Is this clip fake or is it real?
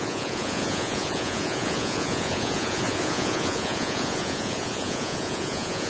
fake